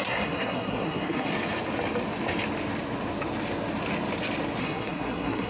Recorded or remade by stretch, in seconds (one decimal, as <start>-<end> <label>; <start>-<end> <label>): 0.0-1.3 remade; 1.3-4.6 recorded; 4.6-5.5 remade